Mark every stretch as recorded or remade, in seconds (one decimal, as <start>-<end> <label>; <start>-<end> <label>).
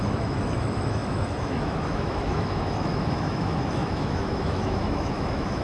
0.0-5.6 remade